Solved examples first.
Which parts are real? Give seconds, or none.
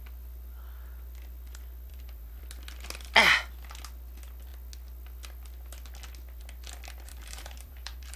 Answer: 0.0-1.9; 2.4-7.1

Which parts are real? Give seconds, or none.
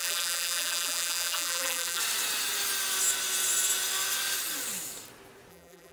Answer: 2.0-5.5